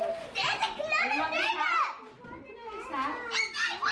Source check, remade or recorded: recorded